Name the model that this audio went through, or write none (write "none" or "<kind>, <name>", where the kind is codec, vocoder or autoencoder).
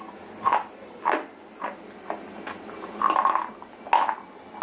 none